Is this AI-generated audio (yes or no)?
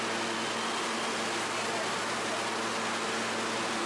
no